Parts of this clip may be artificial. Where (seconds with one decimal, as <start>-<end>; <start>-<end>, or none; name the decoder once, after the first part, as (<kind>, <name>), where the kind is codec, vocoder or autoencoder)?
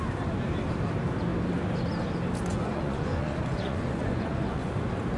2.5-4.7 (vocoder, Vocos)